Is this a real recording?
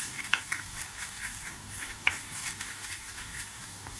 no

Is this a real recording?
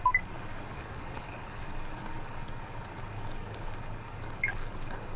no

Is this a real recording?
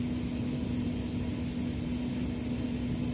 yes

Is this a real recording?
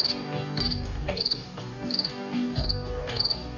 no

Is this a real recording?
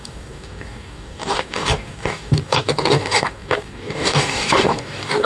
no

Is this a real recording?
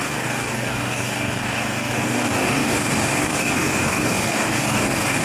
no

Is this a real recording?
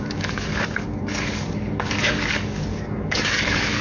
no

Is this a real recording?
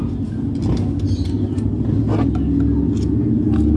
yes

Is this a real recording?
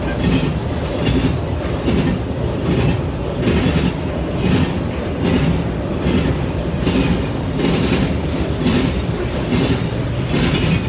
yes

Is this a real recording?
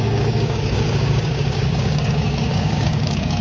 no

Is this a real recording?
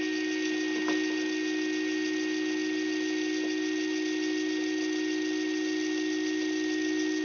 yes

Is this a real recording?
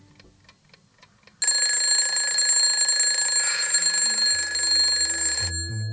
yes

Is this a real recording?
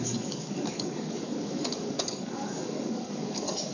no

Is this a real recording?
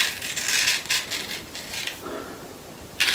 yes